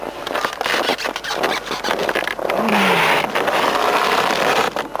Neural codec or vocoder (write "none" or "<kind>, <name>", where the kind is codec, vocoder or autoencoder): none